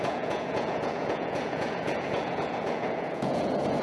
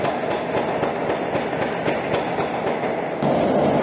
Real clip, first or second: second